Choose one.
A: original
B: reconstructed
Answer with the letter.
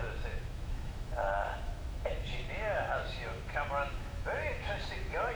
B